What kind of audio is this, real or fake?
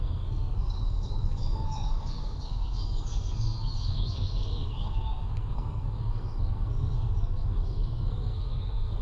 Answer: fake